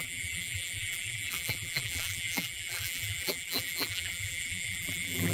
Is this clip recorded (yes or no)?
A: no